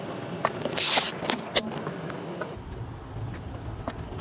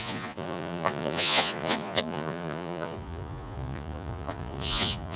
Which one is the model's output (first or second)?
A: second